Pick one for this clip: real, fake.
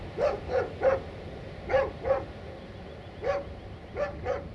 real